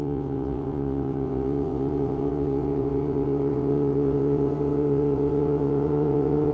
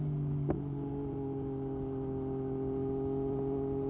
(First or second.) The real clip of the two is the second